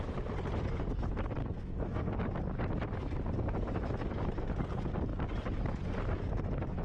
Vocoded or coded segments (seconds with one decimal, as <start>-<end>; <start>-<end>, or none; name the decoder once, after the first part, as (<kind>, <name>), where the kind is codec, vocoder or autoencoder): 1.4-2.1 (codec, SNAC)